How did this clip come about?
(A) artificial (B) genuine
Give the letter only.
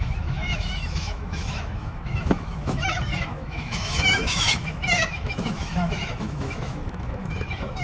A